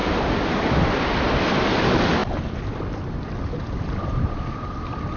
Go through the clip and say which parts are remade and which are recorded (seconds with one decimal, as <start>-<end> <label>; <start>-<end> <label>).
0.0-5.2 recorded